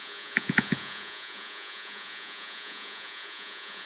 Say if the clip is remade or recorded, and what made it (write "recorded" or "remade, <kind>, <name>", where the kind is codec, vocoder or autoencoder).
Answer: remade, vocoder, Vocos